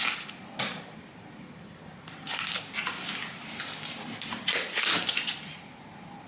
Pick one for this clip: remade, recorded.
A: recorded